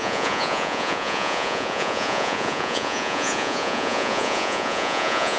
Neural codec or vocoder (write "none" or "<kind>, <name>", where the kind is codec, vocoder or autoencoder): vocoder, Vocos